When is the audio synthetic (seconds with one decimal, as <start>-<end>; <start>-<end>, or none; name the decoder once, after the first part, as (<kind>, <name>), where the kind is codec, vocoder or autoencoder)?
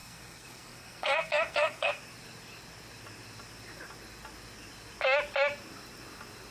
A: 0.0-2.0 (codec, SNAC)